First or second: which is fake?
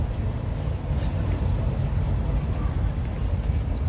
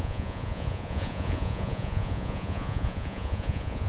second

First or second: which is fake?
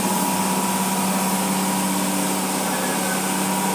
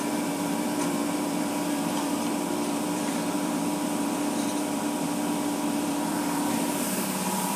second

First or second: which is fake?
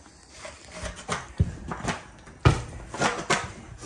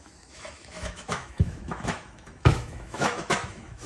second